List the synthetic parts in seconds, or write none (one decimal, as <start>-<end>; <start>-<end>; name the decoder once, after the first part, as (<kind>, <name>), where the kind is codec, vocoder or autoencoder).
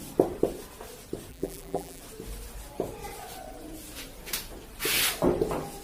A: 1.3-2.0 (vocoder, BigVGAN v2)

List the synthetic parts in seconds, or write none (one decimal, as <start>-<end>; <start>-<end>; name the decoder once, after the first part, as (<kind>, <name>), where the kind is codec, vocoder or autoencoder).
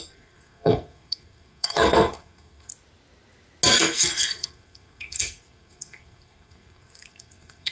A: 0.0-2.7 (codec, SNAC); 3.8-7.7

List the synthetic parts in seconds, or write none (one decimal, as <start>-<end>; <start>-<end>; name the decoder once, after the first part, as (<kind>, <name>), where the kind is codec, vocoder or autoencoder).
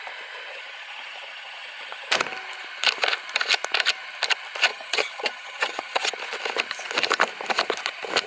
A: 0.5-2.1 (vocoder, HiFi-GAN); 4.7-6.1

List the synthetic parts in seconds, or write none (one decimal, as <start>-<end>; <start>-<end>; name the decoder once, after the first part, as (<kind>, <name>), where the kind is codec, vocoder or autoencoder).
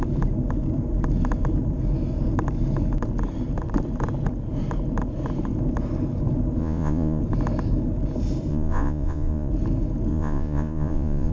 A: 6.6-7.2 (vocoder, Vocos); 8.5-9.5; 10.1-11.3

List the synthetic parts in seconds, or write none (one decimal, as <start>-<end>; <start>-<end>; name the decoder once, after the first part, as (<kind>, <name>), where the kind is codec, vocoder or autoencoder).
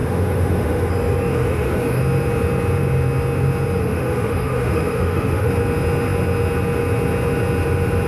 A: 0.0-0.9 (autoencoder, DAC-VAE); 1.3-2.0; 3.8-5.5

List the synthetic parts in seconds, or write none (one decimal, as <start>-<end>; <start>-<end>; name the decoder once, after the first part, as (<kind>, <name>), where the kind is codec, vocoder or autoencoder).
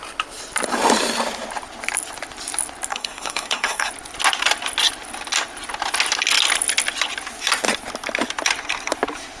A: 2.9-3.9 (codec, SNAC)